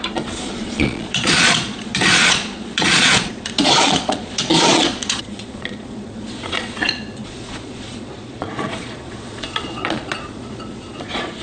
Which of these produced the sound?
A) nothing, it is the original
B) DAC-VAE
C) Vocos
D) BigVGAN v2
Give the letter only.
C